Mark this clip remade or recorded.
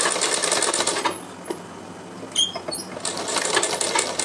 recorded